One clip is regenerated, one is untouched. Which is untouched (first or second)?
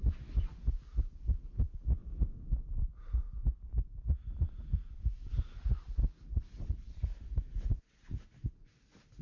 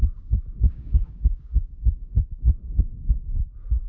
first